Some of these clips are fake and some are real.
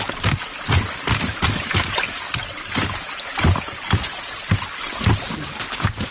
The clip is real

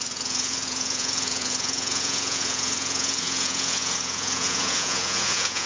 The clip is fake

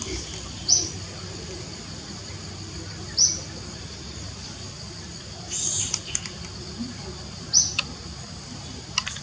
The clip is real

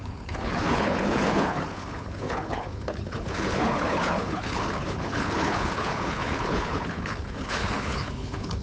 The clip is fake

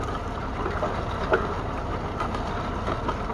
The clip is real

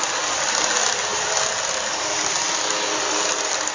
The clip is real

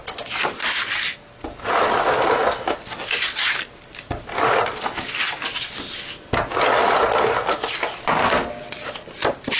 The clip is real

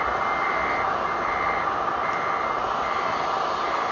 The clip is real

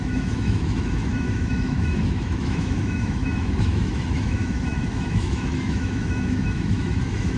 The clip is fake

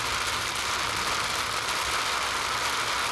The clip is fake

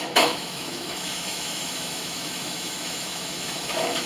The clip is fake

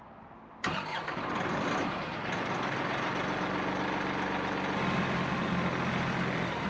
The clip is real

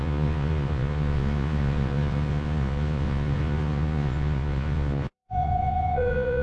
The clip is fake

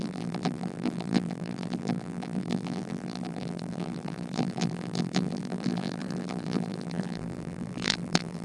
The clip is fake